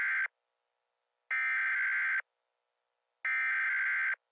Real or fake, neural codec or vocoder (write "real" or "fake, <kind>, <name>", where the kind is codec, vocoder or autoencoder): real